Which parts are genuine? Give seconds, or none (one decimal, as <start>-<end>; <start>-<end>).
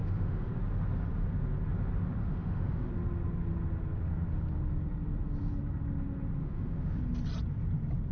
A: 0.5-2.2; 2.9-6.4; 7.0-8.1